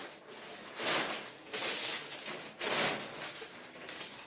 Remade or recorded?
recorded